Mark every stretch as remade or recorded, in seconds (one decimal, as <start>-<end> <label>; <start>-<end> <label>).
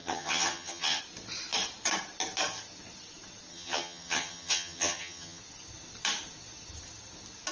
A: 0.0-1.0 remade; 1.0-3.5 recorded; 3.5-5.4 remade; 5.4-7.5 recorded